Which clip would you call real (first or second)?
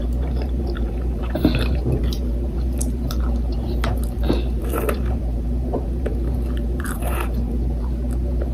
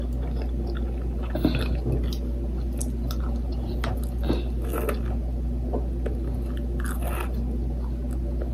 second